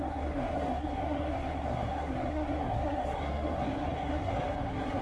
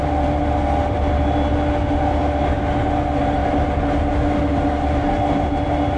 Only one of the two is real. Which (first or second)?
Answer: second